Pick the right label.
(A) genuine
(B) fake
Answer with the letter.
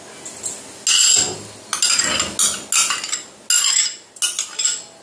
A